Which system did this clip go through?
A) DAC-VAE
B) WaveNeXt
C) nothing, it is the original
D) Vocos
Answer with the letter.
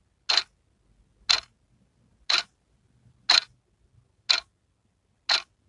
C